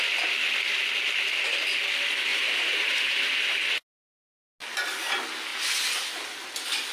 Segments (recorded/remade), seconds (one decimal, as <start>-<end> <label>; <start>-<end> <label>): 0.0-2.3 recorded; 2.3-3.4 remade; 3.4-5.5 recorded; 5.5-6.4 remade; 6.4-6.9 recorded